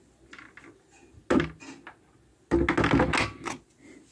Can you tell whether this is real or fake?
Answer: real